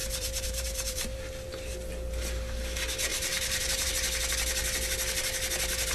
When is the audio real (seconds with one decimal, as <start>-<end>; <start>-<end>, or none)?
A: 1.2-3.1; 3.9-5.9